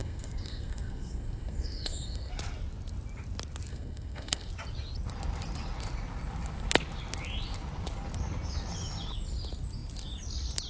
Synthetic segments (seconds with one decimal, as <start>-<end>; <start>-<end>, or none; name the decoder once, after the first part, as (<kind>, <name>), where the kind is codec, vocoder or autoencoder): 0.0-2.3 (codec, SNAC); 3.7-4.5